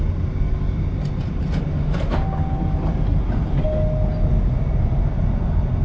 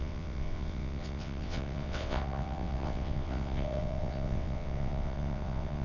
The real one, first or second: first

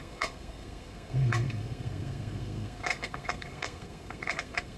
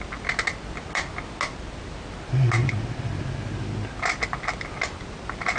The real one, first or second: second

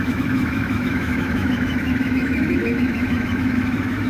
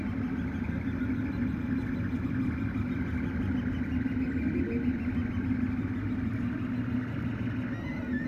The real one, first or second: second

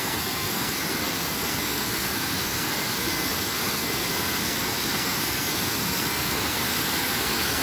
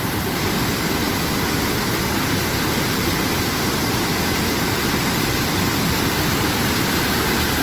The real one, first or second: second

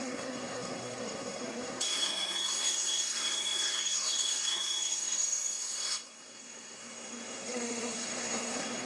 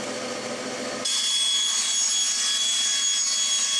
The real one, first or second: second